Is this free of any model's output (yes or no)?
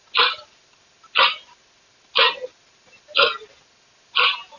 yes